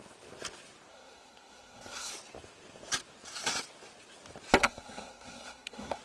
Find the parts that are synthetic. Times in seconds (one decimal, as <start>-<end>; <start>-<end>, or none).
0.9-2.1; 4.6-6.0